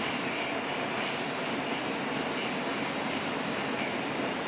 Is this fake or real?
real